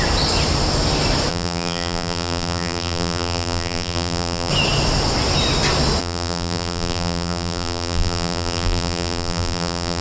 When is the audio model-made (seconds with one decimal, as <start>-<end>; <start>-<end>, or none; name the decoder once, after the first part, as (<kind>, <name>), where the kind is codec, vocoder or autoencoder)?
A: 1.3-4.5 (vocoder, BigVGAN v2); 6.0-10.0